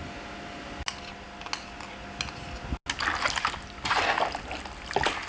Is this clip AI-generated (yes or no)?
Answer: no